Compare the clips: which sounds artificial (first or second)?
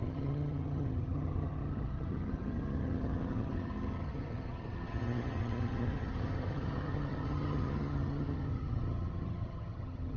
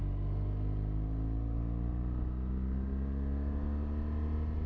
first